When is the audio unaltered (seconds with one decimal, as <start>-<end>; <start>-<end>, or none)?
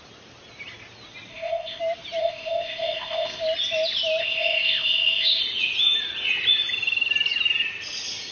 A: 0.0-1.3; 1.8-2.2; 3.4-4.2; 5.4-8.3